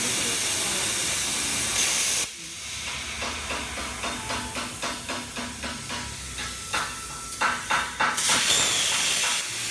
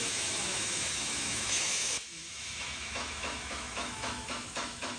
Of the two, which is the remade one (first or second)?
second